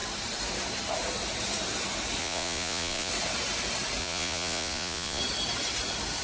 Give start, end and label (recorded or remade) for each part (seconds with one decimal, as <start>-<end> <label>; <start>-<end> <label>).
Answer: 0.0-2.2 recorded; 2.2-3.1 remade; 3.1-4.0 recorded; 4.0-5.2 remade; 5.2-6.2 recorded